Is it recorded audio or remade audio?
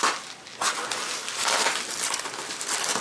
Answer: recorded